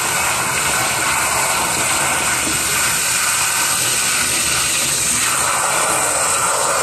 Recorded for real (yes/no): yes